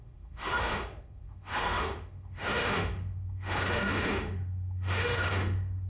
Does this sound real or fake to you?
fake